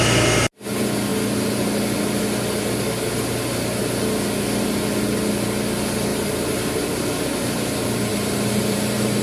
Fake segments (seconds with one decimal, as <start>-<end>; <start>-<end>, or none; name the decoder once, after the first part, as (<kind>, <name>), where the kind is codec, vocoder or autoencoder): 6.1-7.0 (vocoder, BigVGAN v2); 8.1-9.2